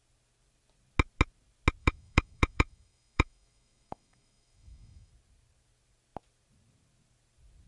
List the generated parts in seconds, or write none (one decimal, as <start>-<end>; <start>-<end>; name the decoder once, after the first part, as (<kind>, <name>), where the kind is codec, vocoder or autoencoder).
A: 1.8-5.1 (autoencoder, DAC-VAE)

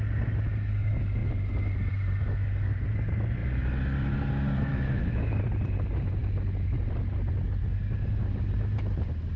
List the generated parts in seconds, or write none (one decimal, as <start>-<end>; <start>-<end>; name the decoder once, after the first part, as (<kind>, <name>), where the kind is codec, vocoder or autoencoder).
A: 4.7-5.4 (autoencoder, DAC-VAE)